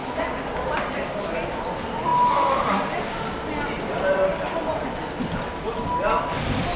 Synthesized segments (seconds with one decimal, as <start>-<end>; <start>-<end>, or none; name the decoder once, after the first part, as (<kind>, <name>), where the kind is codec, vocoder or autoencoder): none